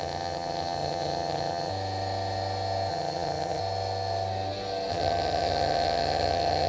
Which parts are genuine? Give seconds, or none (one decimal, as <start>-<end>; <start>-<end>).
1.7-2.9; 3.6-4.9